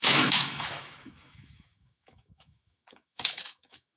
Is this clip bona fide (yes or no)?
no